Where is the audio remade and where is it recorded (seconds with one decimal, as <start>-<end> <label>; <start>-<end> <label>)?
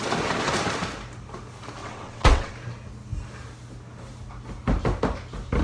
0.0-1.8 recorded; 1.8-2.5 remade; 2.5-5.6 recorded